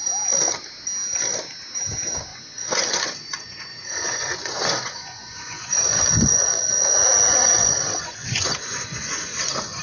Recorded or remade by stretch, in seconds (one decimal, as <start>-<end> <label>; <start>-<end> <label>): 0.0-2.3 recorded; 2.3-6.8 remade; 6.8-7.3 recorded; 7.3-9.8 remade